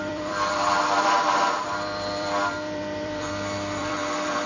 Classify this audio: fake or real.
fake